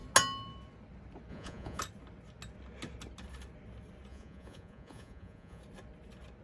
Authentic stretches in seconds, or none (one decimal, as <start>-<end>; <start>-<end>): 0.0-1.3; 1.8-4.1; 5.6-6.4